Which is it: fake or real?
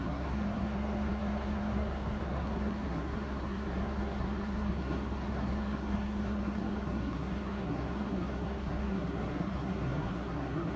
fake